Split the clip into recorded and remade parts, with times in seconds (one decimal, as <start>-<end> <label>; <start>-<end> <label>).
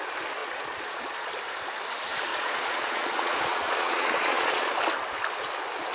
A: 0.0-0.4 recorded; 0.4-1.3 remade; 1.3-2.3 recorded; 2.3-4.7 remade; 4.7-5.9 recorded